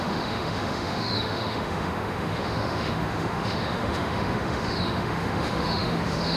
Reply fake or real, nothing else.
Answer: fake